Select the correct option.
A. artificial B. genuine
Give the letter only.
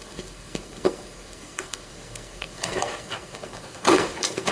A